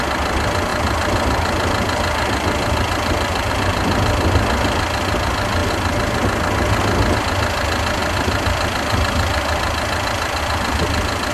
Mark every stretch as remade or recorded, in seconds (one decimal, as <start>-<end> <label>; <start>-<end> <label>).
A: 0.0-8.0 recorded; 8.0-10.4 remade; 10.4-11.3 recorded